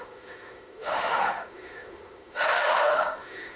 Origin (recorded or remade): remade